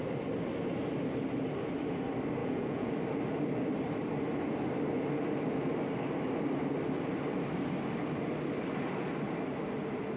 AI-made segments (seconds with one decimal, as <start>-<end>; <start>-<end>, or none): 2.4-2.9